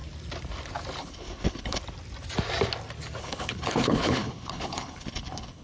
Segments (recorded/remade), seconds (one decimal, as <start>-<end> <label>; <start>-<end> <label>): 0.0-1.0 recorded; 1.0-1.8 remade; 1.8-3.2 recorded; 3.2-5.6 remade